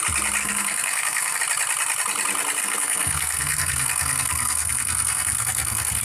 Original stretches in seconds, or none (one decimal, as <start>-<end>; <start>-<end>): 0.0-0.4; 1.4-2.6